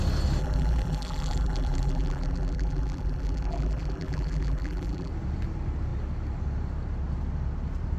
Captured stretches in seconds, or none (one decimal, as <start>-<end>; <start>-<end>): 0.0-0.4; 5.1-8.0